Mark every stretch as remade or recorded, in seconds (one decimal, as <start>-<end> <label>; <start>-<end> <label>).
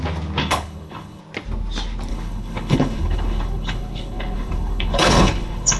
0.0-0.4 recorded; 0.4-1.2 remade; 1.2-2.1 recorded; 2.1-5.8 remade